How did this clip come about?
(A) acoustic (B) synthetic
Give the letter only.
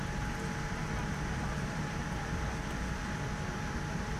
A